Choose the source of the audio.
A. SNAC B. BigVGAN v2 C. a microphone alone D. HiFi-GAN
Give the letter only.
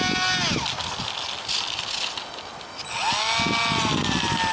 C